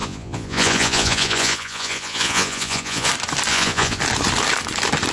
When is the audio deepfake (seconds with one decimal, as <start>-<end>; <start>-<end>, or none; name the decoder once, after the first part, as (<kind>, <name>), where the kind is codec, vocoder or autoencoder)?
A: 0.0-3.1 (vocoder, Vocos); 3.5-4.0